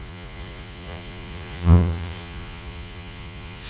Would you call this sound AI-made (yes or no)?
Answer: yes